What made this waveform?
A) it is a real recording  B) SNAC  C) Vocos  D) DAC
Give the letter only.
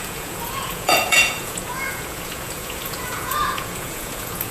C